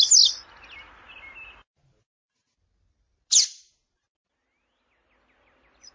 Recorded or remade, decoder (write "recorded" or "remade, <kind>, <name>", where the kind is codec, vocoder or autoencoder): recorded